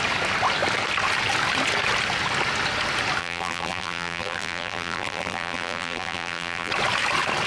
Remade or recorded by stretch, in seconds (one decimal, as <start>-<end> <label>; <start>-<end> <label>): 0.0-3.2 recorded; 3.2-6.7 remade; 6.7-7.5 recorded